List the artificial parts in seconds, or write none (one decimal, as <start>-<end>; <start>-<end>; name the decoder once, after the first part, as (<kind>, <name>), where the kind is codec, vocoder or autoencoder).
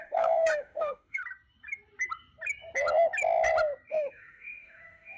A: 0.0-1.2 (autoencoder, DAC-VAE); 3.9-5.2